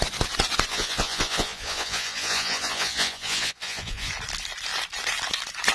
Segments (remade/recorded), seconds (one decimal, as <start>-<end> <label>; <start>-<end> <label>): 0.0-0.7 recorded; 0.7-4.1 remade; 4.1-5.7 recorded